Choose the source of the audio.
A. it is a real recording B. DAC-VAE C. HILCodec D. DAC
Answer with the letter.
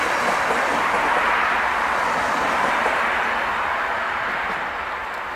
A